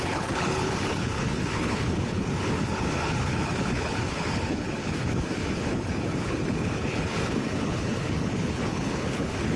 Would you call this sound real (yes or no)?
no